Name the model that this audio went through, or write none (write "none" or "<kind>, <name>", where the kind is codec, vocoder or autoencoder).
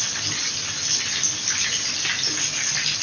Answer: none